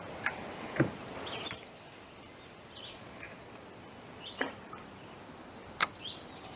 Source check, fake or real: real